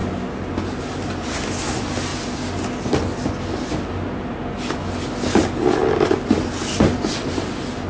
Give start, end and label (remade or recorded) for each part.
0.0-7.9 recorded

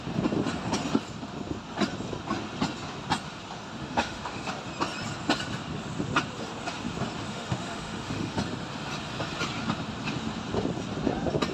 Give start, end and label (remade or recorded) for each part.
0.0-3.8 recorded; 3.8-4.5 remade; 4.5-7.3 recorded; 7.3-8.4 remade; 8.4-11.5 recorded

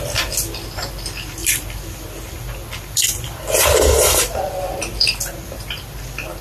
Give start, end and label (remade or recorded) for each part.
0.0-1.4 recorded; 1.4-5.2 remade; 5.2-6.4 recorded

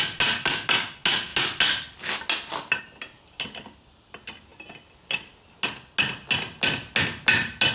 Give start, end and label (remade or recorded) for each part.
0.0-7.7 recorded

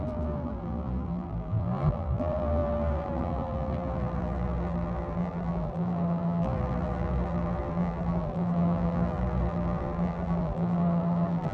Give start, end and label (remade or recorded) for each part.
0.0-11.5 remade